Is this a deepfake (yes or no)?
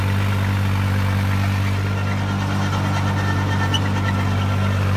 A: no